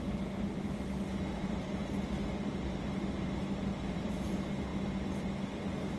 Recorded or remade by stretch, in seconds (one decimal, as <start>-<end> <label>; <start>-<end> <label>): 0.0-6.0 recorded